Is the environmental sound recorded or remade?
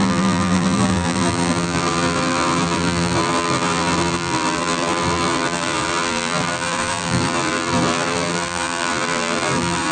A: remade